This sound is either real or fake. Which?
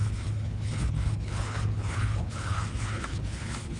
fake